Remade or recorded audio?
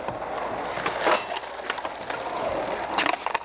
recorded